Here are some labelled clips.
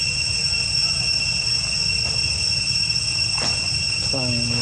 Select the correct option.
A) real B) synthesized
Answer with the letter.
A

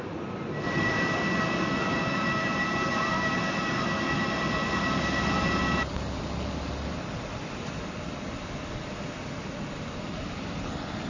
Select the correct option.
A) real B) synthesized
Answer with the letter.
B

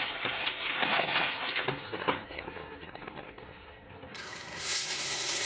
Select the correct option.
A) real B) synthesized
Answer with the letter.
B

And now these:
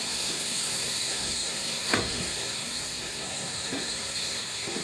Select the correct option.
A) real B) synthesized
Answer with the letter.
B